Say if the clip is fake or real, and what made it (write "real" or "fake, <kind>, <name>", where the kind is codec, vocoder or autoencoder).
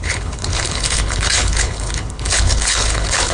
fake, codec, HILCodec